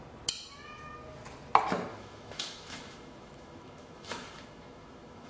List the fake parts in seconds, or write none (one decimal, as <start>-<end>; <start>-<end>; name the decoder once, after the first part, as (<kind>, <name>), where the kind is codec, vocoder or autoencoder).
1.9-5.3 (autoencoder, DAC-VAE)